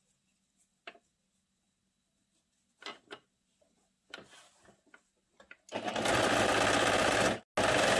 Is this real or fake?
real